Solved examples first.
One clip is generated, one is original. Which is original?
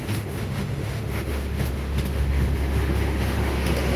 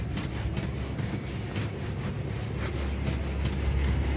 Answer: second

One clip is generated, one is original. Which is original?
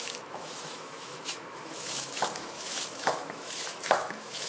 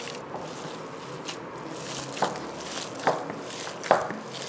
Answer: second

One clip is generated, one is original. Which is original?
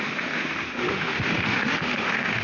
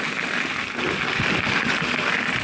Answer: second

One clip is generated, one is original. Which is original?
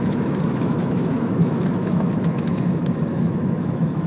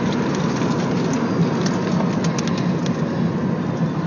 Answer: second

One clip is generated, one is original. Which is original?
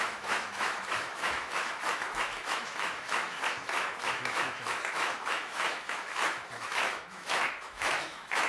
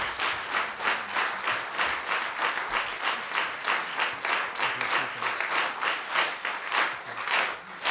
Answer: second